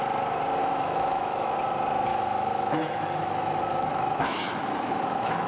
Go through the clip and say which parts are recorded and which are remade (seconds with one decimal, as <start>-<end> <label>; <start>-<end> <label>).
0.0-0.6 recorded; 0.6-1.6 remade; 1.6-2.1 recorded; 2.1-5.5 remade